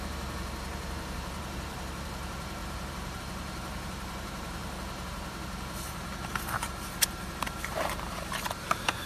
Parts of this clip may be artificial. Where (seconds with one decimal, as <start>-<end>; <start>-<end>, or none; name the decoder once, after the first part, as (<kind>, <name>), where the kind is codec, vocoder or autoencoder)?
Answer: 0.0-9.1 (vocoder, BigVGAN v2)